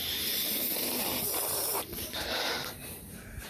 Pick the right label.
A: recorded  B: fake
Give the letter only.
B